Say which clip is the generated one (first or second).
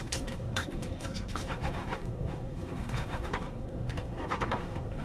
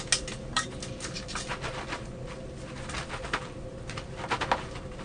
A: first